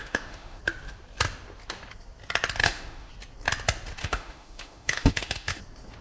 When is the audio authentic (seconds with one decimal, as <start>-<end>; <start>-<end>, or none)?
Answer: 0.6-2.6; 3.1-4.0; 5.6-6.0